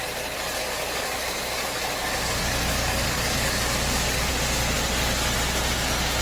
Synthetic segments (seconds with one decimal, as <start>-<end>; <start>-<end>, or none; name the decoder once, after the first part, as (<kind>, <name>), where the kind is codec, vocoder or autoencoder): 0.6-4.3 (codec, DAC)